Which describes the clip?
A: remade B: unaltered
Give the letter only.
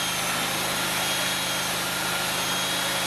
B